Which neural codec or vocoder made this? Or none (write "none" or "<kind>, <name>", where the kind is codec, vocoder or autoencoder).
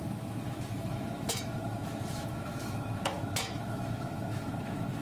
autoencoder, DAC-VAE